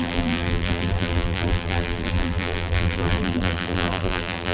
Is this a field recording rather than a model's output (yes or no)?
no